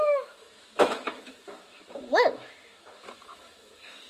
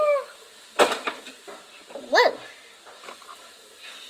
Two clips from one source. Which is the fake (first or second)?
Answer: first